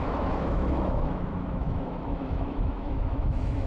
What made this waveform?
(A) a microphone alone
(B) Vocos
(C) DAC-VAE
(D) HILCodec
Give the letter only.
C